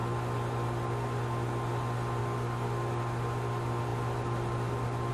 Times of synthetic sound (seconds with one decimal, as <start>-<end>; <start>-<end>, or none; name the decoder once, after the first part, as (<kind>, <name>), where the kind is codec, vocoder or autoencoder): none